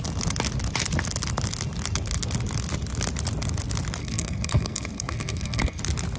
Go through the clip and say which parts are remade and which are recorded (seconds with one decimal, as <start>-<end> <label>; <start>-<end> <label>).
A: 0.0-4.0 recorded; 4.0-5.8 remade; 5.8-6.2 recorded